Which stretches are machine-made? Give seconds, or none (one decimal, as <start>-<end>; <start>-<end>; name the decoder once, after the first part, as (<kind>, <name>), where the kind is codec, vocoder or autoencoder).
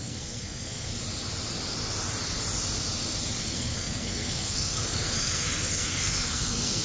0.0-0.9 (codec, SNAC); 3.4-6.8